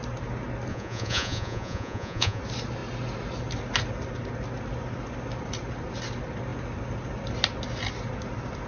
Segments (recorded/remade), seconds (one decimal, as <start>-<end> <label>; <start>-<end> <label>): 0.0-0.7 recorded; 0.7-2.4 remade; 2.4-8.7 recorded